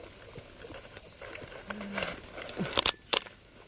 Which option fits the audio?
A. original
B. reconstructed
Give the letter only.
A